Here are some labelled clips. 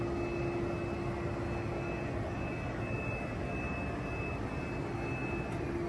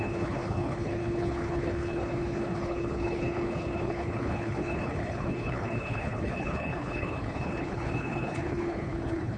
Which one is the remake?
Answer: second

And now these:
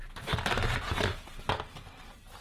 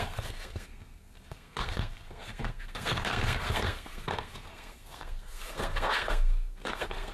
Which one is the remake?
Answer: second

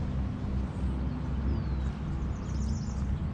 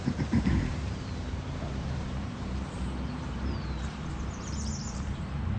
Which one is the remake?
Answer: second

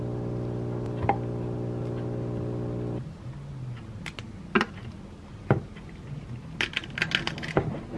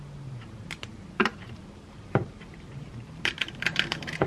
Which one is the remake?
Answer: second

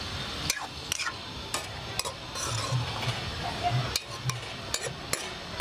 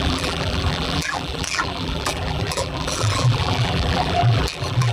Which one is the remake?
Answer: second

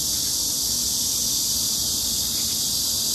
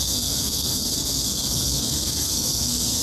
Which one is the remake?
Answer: second